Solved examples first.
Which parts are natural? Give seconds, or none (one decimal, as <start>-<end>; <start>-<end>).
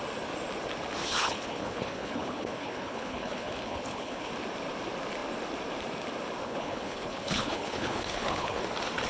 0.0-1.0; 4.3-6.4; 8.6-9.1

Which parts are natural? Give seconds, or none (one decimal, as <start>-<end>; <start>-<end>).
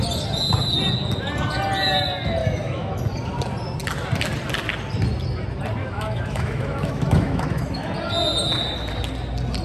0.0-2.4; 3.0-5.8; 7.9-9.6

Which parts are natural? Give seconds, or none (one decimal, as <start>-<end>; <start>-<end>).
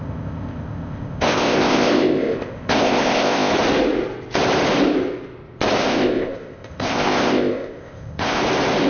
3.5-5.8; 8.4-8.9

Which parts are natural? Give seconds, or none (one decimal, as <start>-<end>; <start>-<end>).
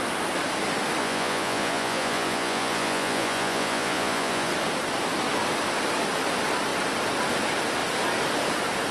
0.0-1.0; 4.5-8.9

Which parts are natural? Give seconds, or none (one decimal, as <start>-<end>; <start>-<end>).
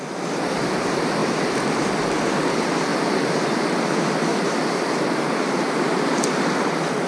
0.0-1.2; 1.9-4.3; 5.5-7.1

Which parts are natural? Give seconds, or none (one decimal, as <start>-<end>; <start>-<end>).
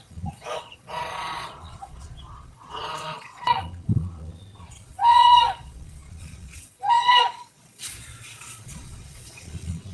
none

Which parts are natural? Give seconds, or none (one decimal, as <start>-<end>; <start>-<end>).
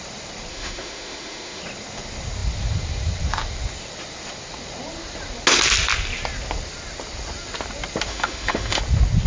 0.0-0.5; 1.6-8.1; 8.8-9.3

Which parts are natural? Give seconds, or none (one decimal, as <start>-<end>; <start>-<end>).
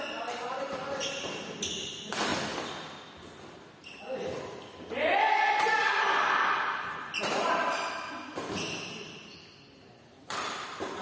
0.0-11.0